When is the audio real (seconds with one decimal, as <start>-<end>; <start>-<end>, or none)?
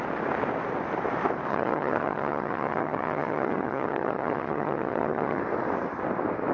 0.0-1.5; 5.4-6.5